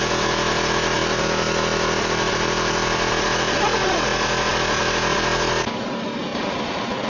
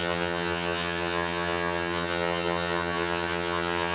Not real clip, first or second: second